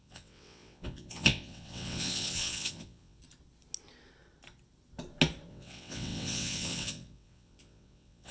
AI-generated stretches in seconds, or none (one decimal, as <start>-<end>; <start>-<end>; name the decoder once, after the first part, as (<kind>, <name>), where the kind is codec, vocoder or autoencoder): 0.0-3.2 (vocoder, WaveNeXt); 5.5-8.3